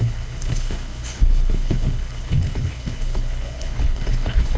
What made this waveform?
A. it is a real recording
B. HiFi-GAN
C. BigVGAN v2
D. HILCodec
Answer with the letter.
D